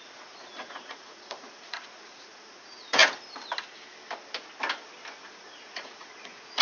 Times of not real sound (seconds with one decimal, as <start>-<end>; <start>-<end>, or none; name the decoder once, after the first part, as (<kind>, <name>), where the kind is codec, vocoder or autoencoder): 0.0-3.0 (vocoder, Vocos); 5.2-6.6